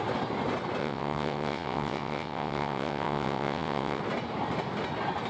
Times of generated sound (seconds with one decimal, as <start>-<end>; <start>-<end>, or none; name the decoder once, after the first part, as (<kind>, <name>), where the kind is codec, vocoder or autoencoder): 0.8-4.0 (vocoder, WaveNeXt)

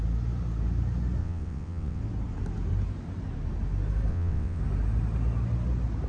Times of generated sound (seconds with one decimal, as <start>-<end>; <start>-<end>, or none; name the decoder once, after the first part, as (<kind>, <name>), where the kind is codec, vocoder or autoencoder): 1.2-2.0 (vocoder, WaveNeXt); 4.1-4.6

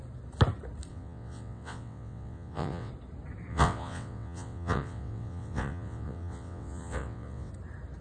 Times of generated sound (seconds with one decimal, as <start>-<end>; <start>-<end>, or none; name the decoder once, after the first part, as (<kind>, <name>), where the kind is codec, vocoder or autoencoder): 0.9-2.9 (vocoder, WaveNeXt); 3.5-7.5

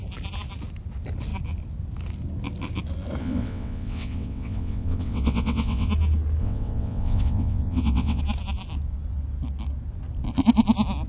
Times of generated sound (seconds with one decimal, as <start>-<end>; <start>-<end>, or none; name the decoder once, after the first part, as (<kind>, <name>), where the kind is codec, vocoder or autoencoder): 3.2-5.9 (vocoder, WaveNeXt); 6.4-8.2

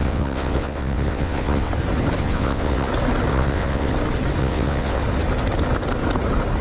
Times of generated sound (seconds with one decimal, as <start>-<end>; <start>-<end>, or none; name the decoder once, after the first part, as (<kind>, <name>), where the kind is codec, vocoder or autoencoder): 0.0-1.7 (vocoder, WaveNeXt); 2.2-2.9; 3.3-3.9; 4.4-5.0

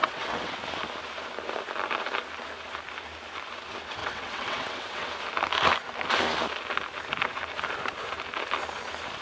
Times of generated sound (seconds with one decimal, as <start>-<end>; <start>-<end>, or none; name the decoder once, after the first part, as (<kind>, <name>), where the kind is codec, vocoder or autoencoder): 0.0-0.6 (vocoder, WaveNeXt); 4.0-5.1